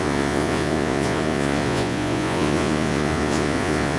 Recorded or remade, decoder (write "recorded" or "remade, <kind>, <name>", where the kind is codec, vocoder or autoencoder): remade, vocoder, Vocos